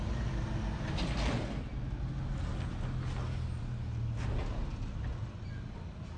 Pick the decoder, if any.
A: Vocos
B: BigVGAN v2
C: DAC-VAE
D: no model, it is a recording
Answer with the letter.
D